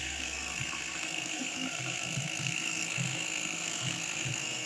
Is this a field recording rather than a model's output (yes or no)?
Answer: no